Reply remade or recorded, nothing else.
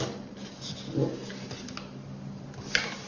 recorded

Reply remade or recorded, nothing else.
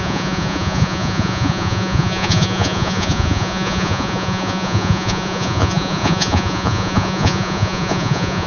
remade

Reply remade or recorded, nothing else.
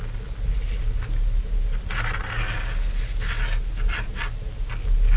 recorded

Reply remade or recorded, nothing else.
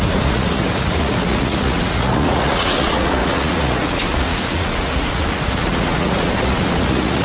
remade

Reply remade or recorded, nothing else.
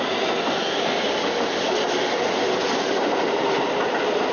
recorded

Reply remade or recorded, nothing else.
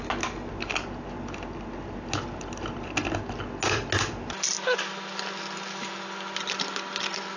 recorded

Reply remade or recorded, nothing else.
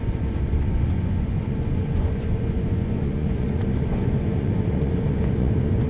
remade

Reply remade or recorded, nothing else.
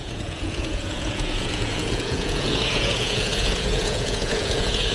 remade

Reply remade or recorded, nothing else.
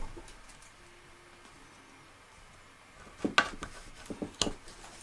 recorded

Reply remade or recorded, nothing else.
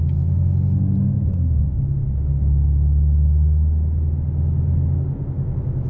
recorded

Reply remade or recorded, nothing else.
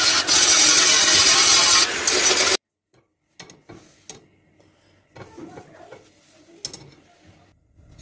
recorded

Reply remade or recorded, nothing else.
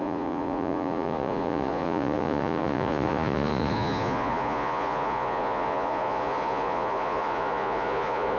remade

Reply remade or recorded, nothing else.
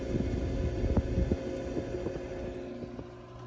recorded